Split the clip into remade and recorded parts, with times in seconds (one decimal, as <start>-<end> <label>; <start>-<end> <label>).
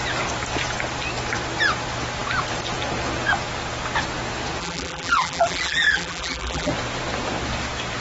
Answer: 0.0-4.6 recorded; 4.6-6.7 remade; 6.7-8.0 recorded